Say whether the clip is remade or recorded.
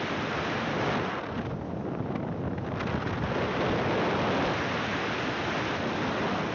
recorded